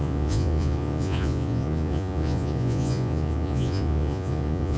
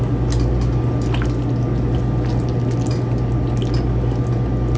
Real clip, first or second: second